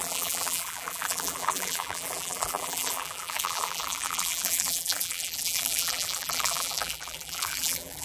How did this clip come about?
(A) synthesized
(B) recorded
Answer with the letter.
A